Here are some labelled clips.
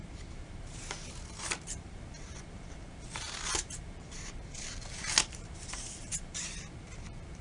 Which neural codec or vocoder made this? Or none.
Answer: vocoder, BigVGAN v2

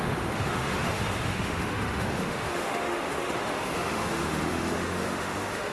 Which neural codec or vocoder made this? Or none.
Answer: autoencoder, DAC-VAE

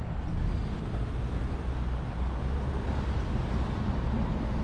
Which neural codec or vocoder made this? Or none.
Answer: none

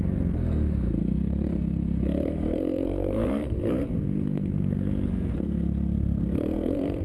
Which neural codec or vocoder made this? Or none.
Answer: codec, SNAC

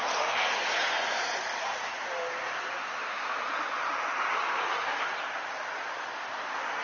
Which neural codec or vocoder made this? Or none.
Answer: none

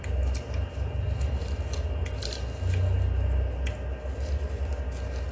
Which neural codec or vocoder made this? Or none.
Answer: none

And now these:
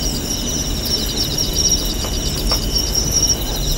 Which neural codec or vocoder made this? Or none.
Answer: none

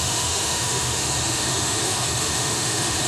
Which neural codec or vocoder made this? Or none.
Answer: autoencoder, DAC-VAE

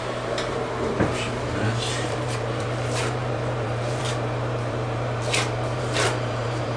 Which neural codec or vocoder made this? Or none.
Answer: vocoder, BigVGAN v2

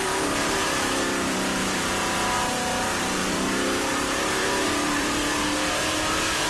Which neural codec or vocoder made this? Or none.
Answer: vocoder, BigVGAN v2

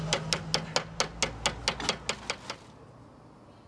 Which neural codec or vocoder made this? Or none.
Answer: none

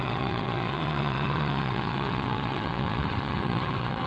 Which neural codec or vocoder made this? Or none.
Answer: vocoder, WaveNeXt